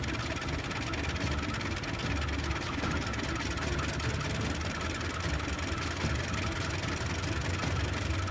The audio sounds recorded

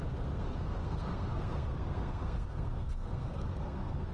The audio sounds remade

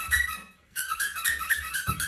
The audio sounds remade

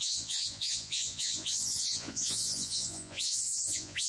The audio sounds remade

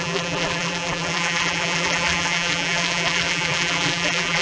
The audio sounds remade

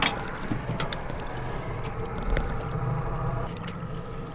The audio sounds recorded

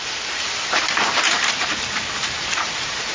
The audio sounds remade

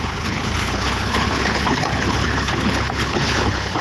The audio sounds remade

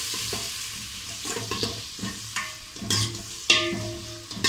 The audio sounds recorded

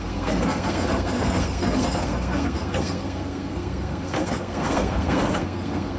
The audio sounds remade